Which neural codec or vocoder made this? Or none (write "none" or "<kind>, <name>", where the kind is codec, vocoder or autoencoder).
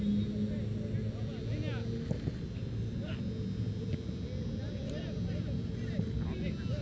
none